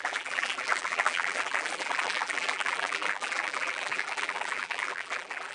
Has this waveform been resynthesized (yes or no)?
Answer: yes